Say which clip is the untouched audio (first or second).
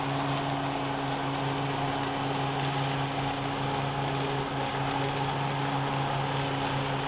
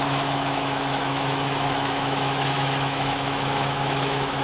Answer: first